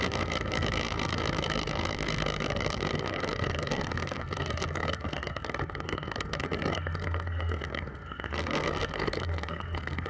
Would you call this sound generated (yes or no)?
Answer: yes